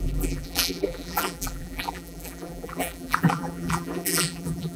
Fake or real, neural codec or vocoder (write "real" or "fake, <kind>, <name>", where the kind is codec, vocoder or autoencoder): fake, vocoder, BigVGAN v2